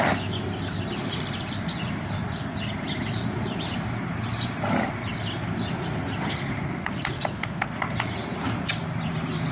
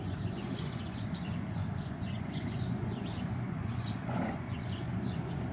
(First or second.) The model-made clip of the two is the second